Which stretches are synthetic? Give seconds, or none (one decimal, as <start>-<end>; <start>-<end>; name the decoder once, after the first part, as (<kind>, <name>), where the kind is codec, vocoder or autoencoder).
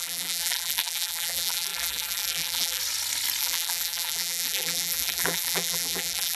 0.0-2.8 (vocoder, BigVGAN v2); 3.4-6.4